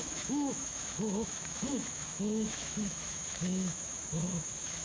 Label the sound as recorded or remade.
remade